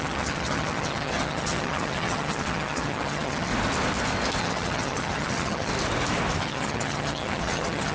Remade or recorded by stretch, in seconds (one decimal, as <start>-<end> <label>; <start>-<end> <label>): 0.0-3.5 remade; 3.5-4.4 recorded; 4.4-5.7 remade; 5.7-6.4 recorded; 6.4-7.9 remade